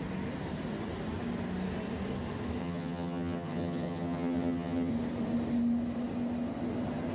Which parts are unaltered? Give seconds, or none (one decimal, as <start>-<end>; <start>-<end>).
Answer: 0.0-2.6; 4.9-7.1